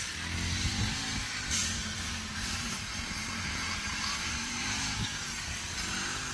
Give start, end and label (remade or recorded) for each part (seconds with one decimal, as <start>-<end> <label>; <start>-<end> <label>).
0.0-1.6 recorded; 1.6-5.4 remade; 5.4-6.3 recorded